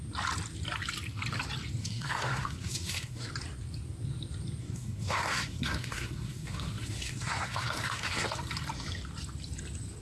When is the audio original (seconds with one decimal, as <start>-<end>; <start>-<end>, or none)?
0.0-1.8; 3.3-4.6; 8.3-10.0